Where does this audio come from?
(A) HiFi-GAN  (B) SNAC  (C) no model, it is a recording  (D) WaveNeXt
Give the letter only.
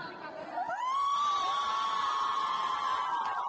C